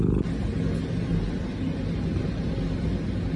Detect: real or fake real